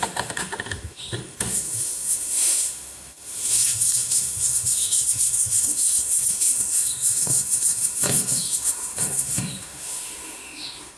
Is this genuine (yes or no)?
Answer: no